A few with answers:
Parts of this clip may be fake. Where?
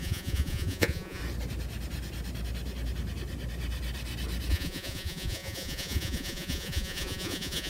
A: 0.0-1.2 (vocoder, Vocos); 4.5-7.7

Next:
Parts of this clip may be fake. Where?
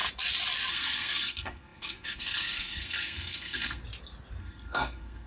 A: 0.7-3.8 (codec, SNAC); 4.4-5.3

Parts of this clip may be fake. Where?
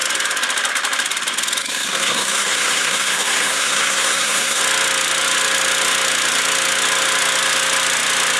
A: 1.6-4.6 (codec, SNAC)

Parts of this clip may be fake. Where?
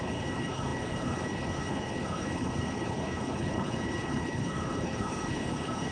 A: 0.0-5.9 (codec, HILCodec)